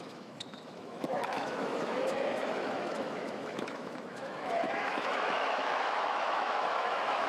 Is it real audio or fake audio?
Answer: fake